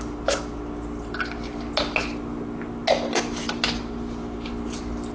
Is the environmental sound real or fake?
real